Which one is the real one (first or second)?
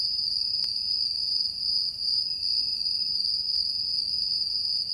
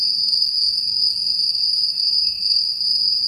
first